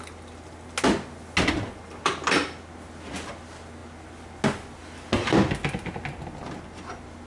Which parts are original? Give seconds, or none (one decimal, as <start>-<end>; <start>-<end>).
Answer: 0.0-7.3